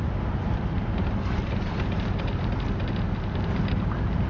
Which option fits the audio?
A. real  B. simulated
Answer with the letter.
B